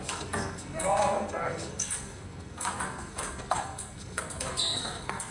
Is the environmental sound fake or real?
fake